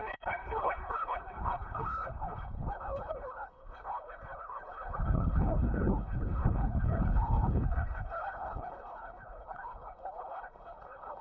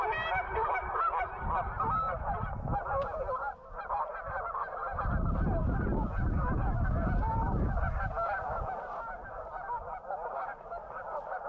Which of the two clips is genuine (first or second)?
second